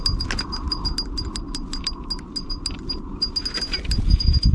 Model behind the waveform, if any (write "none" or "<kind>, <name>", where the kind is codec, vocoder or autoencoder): none